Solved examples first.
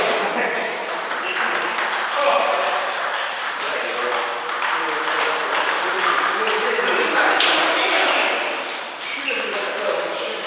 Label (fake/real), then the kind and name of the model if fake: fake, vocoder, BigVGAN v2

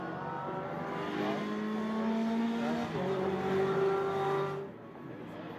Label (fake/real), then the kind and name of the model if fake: real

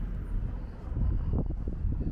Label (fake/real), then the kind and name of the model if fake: fake, vocoder, BigVGAN v2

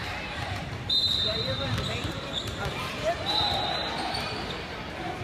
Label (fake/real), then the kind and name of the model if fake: fake, vocoder, BigVGAN v2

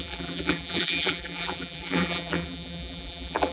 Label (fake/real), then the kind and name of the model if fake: fake, vocoder, BigVGAN v2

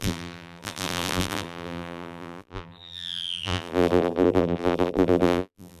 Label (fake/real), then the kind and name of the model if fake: fake, vocoder, BigVGAN v2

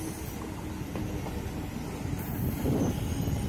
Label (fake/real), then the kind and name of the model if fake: real